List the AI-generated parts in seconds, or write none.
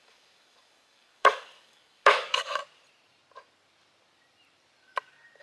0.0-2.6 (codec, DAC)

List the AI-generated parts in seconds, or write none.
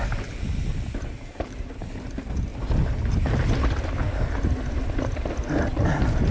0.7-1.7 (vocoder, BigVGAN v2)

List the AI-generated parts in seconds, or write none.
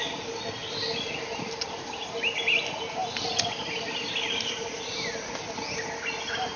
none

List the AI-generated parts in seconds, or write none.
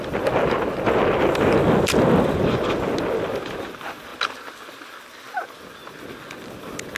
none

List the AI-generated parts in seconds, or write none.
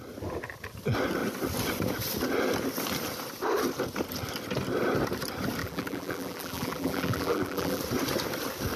5.6-7.8 (vocoder, BigVGAN v2)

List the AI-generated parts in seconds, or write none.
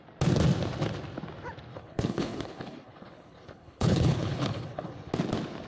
1.7-5.1 (codec, HILCodec)